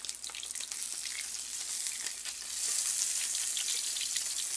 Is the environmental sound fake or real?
real